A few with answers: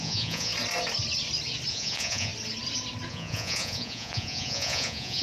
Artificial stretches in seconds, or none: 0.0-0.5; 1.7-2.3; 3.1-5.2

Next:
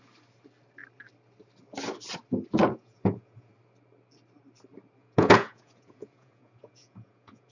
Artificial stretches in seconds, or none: 2.6-3.5; 5.0-7.5